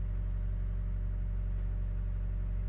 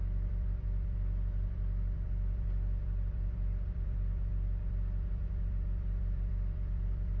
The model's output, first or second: second